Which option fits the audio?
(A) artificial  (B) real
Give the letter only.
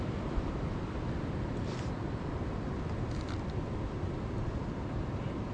B